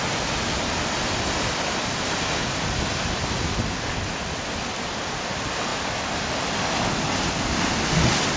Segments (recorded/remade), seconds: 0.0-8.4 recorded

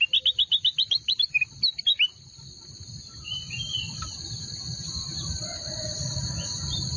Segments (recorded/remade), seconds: 0.0-7.0 recorded

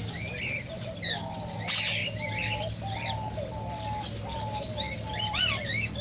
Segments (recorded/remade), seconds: 0.0-6.0 recorded

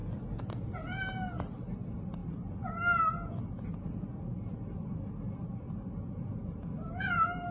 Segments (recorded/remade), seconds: 0.0-7.5 recorded

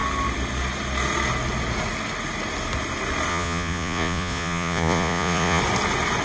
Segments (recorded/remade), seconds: 0.0-3.3 recorded; 3.3-5.6 remade; 5.6-6.2 recorded

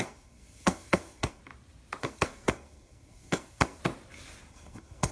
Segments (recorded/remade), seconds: 0.0-1.4 remade; 1.4-2.0 recorded; 2.0-3.8 remade; 3.8-4.5 recorded; 4.5-5.1 remade

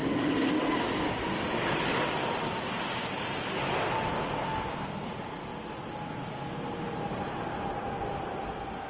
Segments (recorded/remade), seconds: 0.0-4.4 recorded; 4.4-5.1 remade; 5.1-8.9 recorded